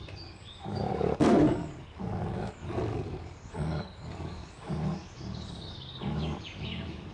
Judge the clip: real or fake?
fake